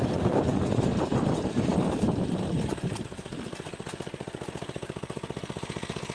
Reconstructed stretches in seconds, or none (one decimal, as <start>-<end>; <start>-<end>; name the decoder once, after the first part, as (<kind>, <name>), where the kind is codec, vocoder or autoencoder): 0.0-6.1 (vocoder, BigVGAN v2)